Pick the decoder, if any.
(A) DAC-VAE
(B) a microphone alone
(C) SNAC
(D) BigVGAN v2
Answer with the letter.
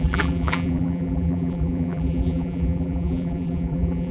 D